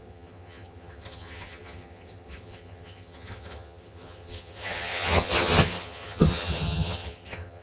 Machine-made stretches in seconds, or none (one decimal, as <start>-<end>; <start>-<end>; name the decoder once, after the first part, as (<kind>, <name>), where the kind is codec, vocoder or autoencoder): 0.0-7.6 (vocoder, HiFi-GAN)